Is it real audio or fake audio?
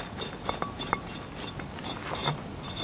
real